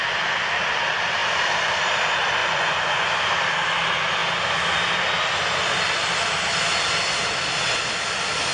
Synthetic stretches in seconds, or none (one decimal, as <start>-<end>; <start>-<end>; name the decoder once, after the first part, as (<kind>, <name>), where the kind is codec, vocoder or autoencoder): 2.4-3.1 (vocoder, Vocos)